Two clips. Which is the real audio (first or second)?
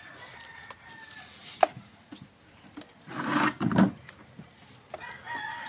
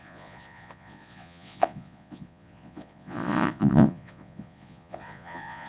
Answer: first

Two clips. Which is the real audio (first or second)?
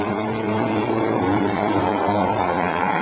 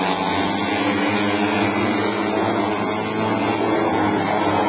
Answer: second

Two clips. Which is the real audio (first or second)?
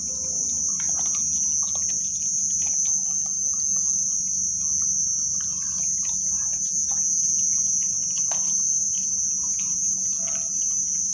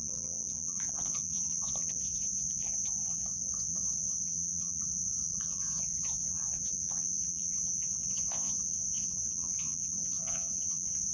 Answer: first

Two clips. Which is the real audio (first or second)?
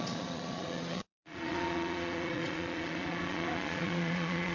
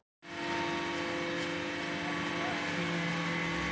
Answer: second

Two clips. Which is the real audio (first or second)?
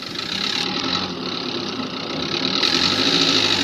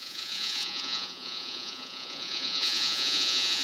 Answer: first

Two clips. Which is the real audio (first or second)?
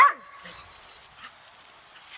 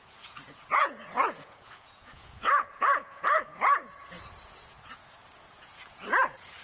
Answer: first